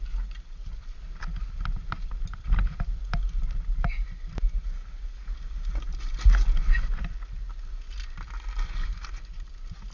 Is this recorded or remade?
recorded